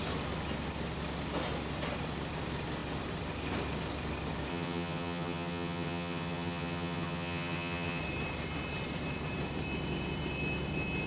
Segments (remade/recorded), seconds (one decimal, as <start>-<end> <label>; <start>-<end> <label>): 0.0-4.5 recorded; 4.5-8.0 remade; 8.0-11.1 recorded